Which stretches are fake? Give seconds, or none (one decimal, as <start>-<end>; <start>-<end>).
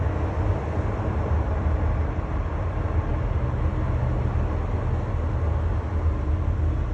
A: none